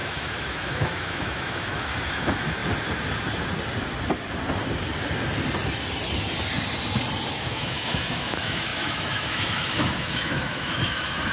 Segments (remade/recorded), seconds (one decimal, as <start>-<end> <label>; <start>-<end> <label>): 0.0-2.6 remade; 2.6-7.3 recorded; 7.3-11.3 remade